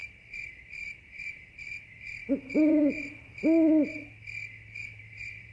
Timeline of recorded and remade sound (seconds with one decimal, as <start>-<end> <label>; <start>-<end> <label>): 0.0-3.4 remade; 3.4-4.8 recorded; 4.8-5.5 remade